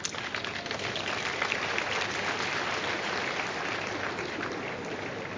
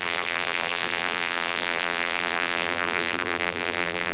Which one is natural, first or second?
first